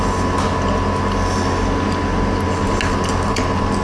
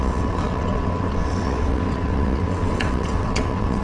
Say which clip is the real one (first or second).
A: first